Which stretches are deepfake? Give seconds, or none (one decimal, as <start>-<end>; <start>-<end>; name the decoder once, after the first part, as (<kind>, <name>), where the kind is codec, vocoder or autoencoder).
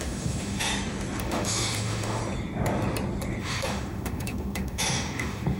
0.0-0.7 (autoencoder, DAC-VAE); 1.2-2.2; 3.4-5.6